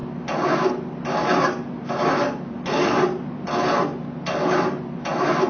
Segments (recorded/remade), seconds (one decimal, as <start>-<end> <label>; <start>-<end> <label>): 0.0-5.5 recorded